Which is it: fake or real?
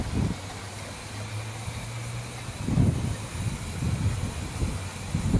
real